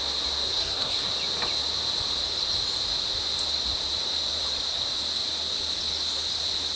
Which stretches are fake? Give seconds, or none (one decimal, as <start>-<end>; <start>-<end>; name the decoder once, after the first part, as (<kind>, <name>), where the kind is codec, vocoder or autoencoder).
0.5-1.1 (codec, SNAC)